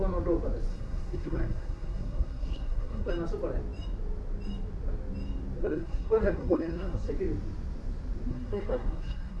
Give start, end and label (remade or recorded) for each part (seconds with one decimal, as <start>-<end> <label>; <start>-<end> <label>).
0.0-0.7 recorded; 0.7-3.1 remade; 3.1-5.6 recorded; 5.6-7.1 remade; 7.1-8.3 recorded; 8.3-9.4 remade